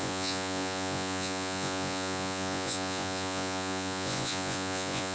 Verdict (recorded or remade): remade